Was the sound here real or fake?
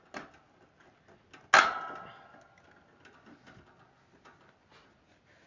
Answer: real